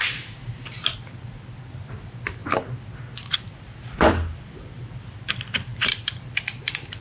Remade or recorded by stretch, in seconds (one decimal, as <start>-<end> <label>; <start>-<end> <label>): 0.0-5.7 recorded; 5.7-6.4 remade; 6.4-7.0 recorded